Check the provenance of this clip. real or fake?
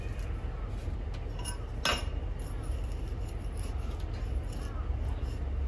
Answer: real